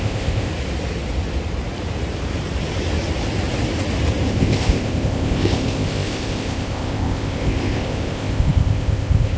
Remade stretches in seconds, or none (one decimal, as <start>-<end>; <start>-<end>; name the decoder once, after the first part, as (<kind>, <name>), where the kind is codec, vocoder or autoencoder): 0.0-0.5 (codec, ZipCodec); 4.3-9.4